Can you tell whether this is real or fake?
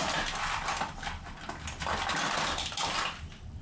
real